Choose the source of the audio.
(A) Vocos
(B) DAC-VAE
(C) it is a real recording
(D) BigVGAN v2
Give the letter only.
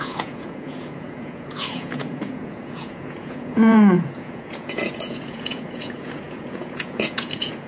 A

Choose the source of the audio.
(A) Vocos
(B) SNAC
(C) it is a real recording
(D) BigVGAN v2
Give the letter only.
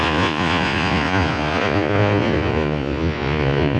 A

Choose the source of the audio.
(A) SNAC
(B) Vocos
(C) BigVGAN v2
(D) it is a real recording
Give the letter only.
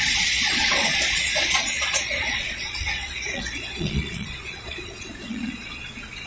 B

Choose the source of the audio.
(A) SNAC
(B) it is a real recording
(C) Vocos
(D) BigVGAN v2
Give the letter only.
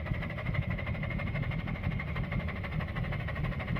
B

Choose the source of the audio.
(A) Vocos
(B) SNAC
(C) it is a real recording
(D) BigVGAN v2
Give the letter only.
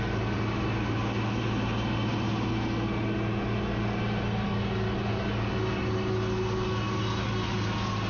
C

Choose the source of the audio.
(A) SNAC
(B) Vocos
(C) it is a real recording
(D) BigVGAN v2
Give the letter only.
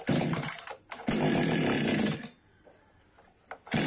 C